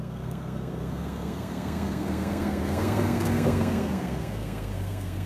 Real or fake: fake